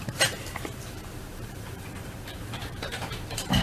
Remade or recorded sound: remade